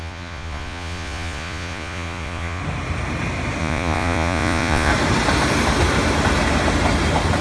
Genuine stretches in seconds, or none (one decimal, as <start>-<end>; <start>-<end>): 2.6-3.6; 4.9-7.4